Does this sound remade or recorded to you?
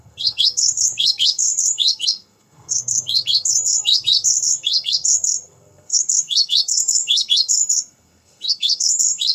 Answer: remade